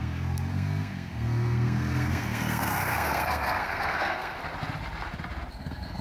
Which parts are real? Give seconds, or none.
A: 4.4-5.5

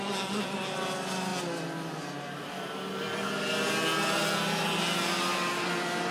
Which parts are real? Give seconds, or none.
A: 0.0-6.1

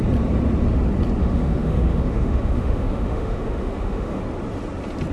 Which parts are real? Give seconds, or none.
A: 0.0-1.2; 4.2-5.1

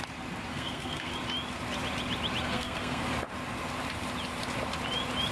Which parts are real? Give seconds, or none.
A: 0.0-0.5; 1.1-2.4; 3.0-5.3

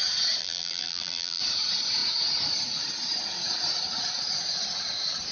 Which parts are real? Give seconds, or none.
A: 0.0-0.4; 1.4-5.3

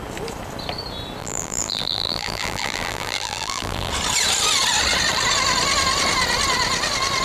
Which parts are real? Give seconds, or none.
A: 0.0-1.2; 3.9-7.2

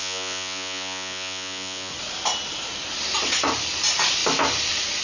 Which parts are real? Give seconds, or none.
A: 1.9-5.0

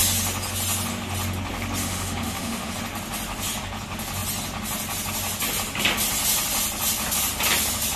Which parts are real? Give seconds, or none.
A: 0.0-1.8; 2.7-8.0